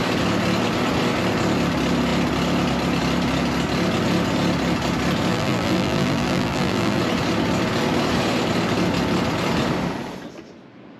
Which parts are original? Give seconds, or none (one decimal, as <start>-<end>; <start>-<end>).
0.0-5.3; 7.0-11.0